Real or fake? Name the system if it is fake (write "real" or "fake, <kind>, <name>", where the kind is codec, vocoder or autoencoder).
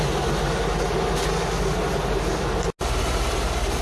real